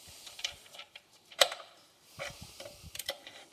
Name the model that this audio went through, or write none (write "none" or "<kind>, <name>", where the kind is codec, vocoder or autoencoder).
vocoder, BigVGAN v2